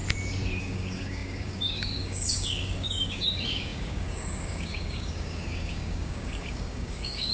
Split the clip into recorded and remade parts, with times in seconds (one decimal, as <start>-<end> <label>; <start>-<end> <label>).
0.0-0.6 recorded; 0.6-7.3 remade